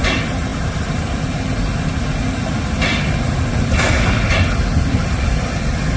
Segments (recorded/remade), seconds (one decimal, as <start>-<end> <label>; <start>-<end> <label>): 0.0-6.0 recorded

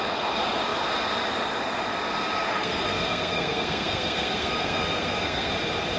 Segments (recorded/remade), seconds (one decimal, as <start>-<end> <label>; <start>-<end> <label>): 0.0-2.5 recorded; 2.5-5.5 remade; 5.5-6.0 recorded

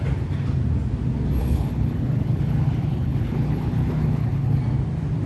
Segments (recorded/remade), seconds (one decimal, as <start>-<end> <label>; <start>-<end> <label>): 0.0-1.4 recorded; 1.4-4.6 remade; 4.6-5.3 recorded

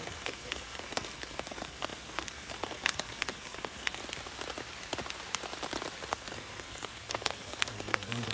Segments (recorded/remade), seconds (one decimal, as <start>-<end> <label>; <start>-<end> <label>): 0.0-4.0 remade; 4.0-6.1 recorded; 6.1-8.3 remade